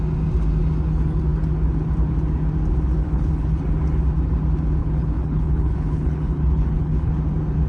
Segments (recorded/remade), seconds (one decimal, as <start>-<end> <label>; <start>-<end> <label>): 0.0-3.0 recorded; 3.0-3.6 remade; 3.6-4.8 recorded; 4.8-7.1 remade; 7.1-7.7 recorded